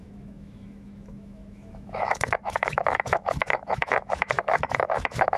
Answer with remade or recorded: remade